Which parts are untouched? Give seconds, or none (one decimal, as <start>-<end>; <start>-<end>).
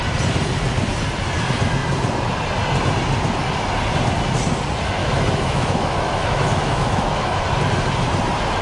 0.0-5.0; 7.4-8.6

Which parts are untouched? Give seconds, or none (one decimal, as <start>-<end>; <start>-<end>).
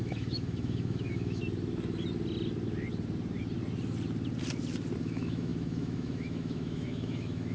1.4-5.0